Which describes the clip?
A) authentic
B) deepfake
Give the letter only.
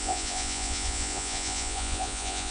B